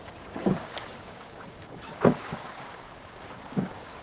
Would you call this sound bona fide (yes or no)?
no